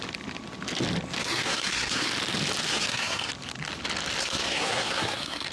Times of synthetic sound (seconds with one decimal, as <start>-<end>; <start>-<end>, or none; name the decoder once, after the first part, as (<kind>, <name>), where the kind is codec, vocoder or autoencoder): 1.2-2.1 (codec, SNAC); 2.7-3.3; 4.2-5.5